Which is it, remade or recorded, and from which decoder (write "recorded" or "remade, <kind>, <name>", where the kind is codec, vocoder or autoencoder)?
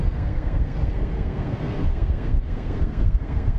remade, codec, SNAC